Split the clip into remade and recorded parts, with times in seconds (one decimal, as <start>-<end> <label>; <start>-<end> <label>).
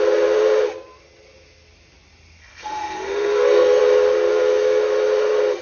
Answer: 0.0-2.4 recorded; 2.4-3.8 remade; 3.8-4.3 recorded; 4.3-4.8 remade; 4.8-5.6 recorded